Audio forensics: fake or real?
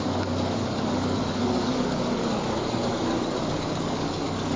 fake